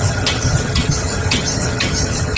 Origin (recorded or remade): remade